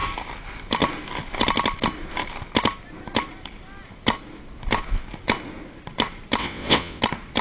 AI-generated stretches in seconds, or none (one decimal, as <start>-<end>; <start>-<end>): 6.4-7.0